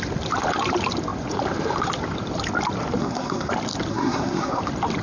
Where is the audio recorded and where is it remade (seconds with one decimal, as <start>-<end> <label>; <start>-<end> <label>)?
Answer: 0.0-3.0 recorded; 3.0-3.5 remade; 3.5-3.9 recorded; 3.9-4.6 remade; 4.6-5.0 recorded